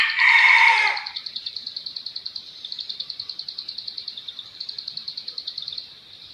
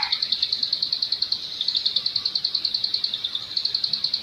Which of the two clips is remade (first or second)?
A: first